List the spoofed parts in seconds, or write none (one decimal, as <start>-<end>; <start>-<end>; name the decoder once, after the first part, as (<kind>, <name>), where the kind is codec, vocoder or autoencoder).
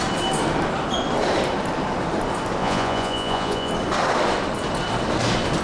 2.6-3.7 (vocoder, Vocos)